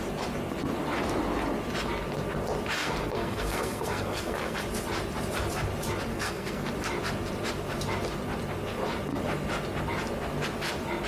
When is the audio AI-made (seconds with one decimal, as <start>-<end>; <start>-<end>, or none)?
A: 2.8-4.6; 6.1-6.7